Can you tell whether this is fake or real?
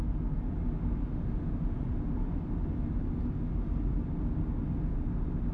real